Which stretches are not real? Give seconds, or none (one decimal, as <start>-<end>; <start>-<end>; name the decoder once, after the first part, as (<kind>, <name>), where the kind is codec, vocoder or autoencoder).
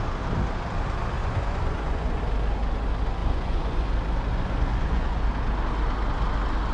1.2-2.2 (vocoder, Vocos); 3.2-3.9; 4.3-5.2